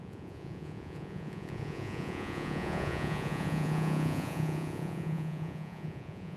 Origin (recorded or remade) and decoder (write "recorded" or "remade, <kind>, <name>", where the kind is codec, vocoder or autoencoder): remade, vocoder, Vocos